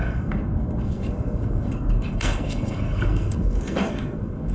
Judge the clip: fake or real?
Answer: fake